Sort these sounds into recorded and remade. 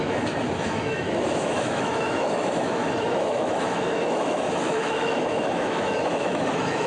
remade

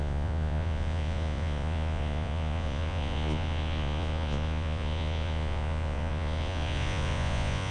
remade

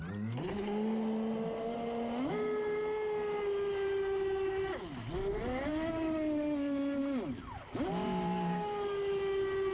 recorded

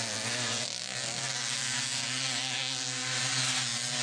recorded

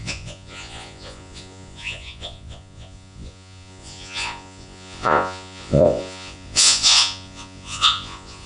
remade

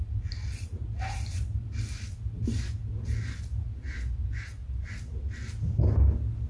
recorded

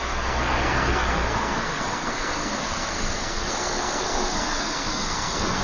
remade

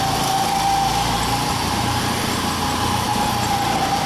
recorded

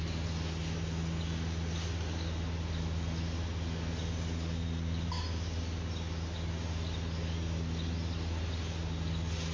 recorded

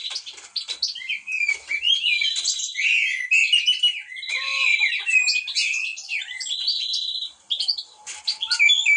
recorded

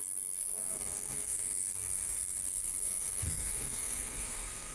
remade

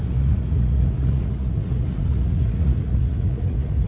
remade